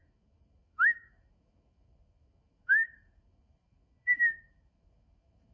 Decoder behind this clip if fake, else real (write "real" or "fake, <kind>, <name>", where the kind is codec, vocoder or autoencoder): fake, autoencoder, DAC-VAE